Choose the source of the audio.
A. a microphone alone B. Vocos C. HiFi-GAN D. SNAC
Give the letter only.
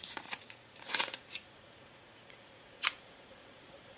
B